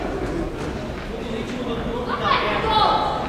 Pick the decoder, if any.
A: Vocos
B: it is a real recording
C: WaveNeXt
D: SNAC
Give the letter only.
B